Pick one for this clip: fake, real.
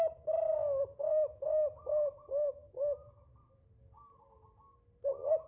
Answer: real